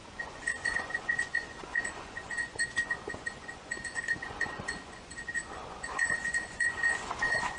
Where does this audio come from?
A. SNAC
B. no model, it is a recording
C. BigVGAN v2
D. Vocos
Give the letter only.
D